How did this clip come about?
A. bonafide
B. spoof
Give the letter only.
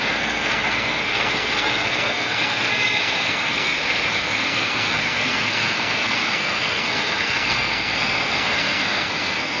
B